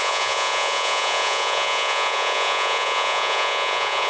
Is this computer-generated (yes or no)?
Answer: yes